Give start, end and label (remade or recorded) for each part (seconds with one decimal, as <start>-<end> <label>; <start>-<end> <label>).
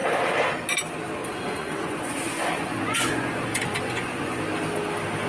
0.0-1.2 recorded; 1.2-4.4 remade; 4.4-5.3 recorded